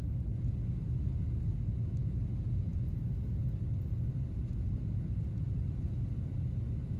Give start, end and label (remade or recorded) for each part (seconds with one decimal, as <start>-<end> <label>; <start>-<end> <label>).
0.0-7.0 recorded

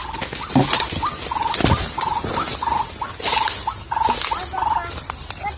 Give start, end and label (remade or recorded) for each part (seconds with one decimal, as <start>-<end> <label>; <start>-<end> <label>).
0.0-5.6 recorded

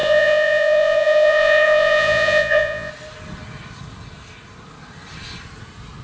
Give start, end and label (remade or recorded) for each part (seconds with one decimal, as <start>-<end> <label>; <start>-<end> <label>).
0.0-2.9 remade; 2.9-6.0 recorded

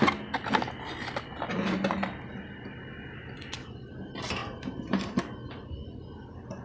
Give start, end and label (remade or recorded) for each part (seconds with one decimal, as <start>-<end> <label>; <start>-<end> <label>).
0.0-6.6 recorded

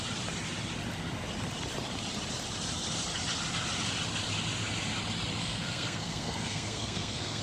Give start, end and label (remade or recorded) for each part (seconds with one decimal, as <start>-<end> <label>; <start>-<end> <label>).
0.0-5.4 recorded; 5.4-7.4 remade

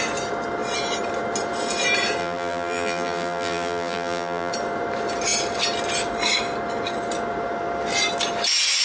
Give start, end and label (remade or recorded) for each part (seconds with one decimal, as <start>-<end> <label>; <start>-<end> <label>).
0.0-2.2 recorded; 2.2-4.5 remade; 4.5-8.8 recorded